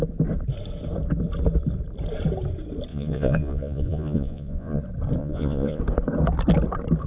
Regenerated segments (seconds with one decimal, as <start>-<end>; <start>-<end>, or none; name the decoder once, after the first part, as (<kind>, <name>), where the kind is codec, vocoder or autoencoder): 2.9-4.8 (vocoder, Vocos); 5.2-5.8